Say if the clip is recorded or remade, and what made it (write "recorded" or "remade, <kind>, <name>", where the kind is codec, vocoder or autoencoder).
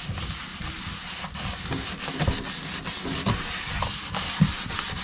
recorded